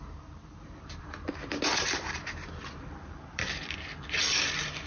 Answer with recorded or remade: remade